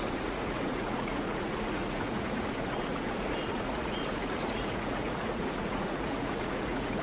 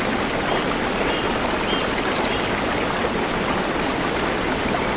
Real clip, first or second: second